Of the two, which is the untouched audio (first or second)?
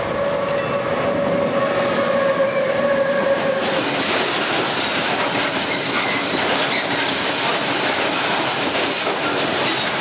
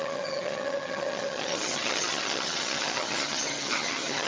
first